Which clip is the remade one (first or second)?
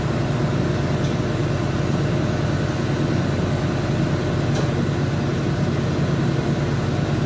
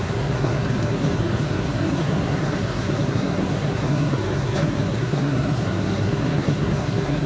second